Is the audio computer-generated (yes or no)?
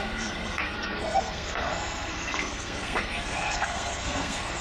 yes